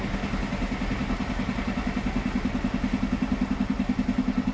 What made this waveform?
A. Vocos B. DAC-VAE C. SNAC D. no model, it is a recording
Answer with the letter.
D